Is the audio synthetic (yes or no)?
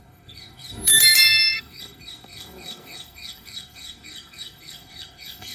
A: yes